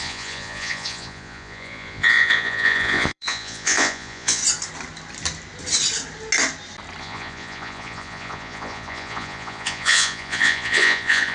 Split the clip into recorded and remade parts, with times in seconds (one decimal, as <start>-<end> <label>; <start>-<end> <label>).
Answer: 0.0-4.4 remade; 4.4-7.0 recorded; 7.0-11.3 remade